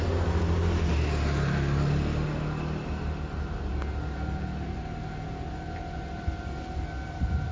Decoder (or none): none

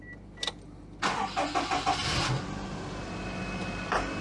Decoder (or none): none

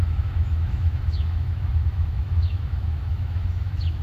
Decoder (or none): autoencoder, DAC-VAE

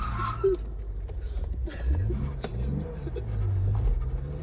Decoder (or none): none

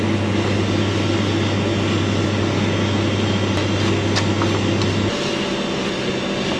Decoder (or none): none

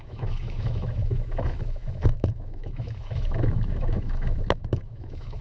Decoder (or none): autoencoder, DAC-VAE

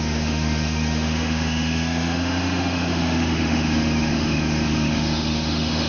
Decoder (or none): autoencoder, DAC-VAE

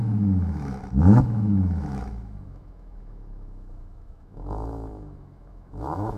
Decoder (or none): autoencoder, DAC-VAE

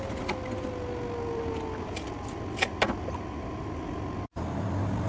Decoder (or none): none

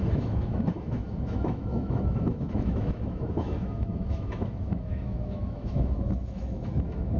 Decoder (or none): autoencoder, DAC-VAE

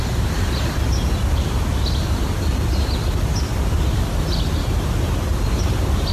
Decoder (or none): none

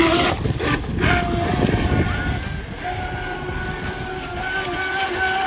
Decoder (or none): none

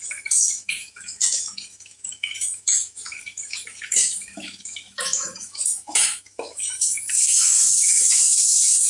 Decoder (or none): autoencoder, DAC-VAE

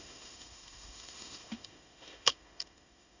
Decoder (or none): autoencoder, DAC-VAE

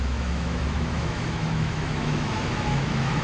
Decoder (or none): autoencoder, DAC-VAE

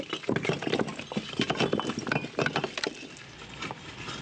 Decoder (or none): none